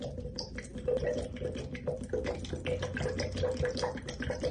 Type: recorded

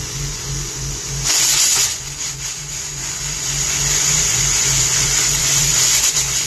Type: remade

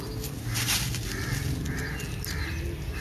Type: recorded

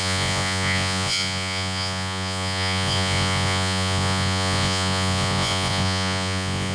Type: remade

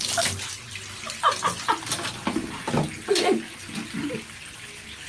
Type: recorded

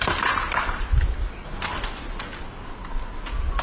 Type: recorded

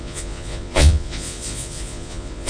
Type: remade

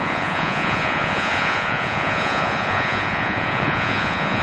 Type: remade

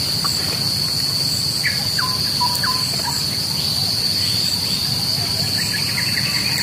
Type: recorded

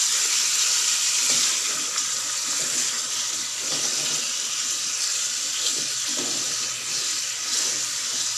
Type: recorded